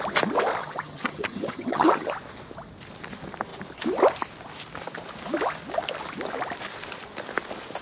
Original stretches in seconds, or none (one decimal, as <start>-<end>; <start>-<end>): 0.0-0.6; 2.1-7.8